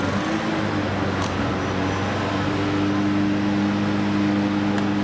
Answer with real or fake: real